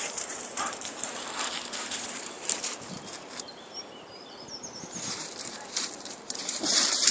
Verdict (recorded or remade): remade